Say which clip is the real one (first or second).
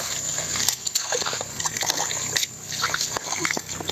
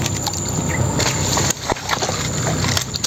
second